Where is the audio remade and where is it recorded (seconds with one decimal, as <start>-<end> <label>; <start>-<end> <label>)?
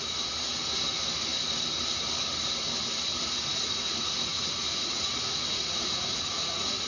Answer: 0.0-3.1 recorded; 3.1-6.9 remade